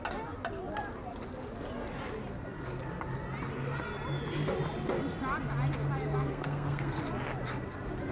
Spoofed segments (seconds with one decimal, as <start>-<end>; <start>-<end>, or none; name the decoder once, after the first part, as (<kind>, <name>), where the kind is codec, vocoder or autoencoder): 6.3-7.0 (codec, SNAC)